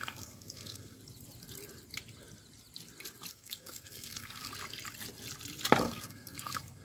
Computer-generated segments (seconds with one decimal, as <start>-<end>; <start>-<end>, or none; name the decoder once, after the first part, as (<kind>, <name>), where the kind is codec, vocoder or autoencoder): 0.0-1.0 (codec, SNAC); 3.3-4.5; 5.8-6.8